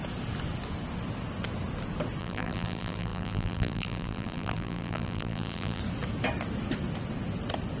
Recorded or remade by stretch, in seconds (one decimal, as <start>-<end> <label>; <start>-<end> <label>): 0.0-2.2 recorded; 2.2-5.8 remade; 5.8-7.8 recorded